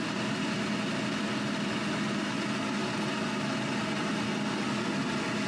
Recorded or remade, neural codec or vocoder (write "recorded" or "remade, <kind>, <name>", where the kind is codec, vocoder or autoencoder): recorded